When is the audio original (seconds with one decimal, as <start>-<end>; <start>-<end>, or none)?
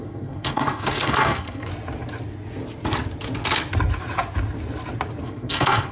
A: 1.7-5.2